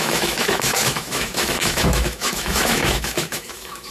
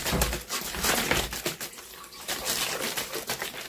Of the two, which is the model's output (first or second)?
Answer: first